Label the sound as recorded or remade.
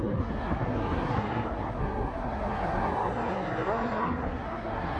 remade